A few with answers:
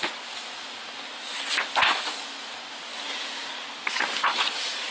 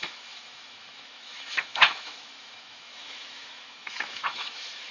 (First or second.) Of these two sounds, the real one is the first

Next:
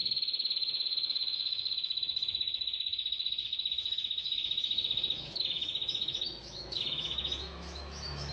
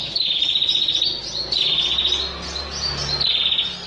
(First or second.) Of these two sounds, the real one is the second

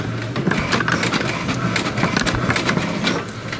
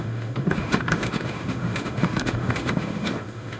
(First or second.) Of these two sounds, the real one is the first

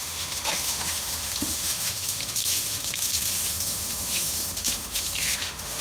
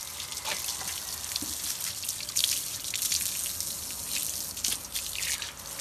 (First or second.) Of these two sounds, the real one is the second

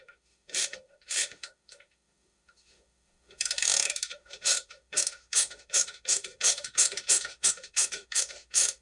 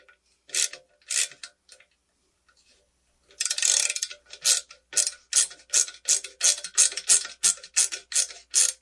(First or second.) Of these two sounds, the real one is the second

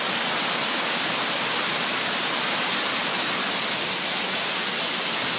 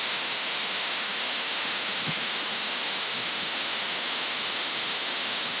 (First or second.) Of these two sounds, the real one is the first